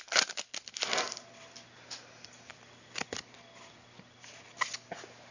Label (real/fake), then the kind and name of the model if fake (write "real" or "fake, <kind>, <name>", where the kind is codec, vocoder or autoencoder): real